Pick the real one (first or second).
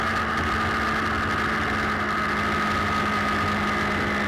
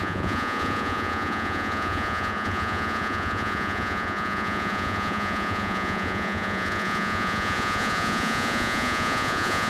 first